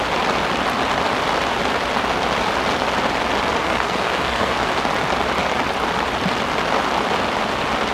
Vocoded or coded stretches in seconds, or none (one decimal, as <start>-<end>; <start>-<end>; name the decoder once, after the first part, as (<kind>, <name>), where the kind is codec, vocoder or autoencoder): 3.6-4.7 (codec, SNAC)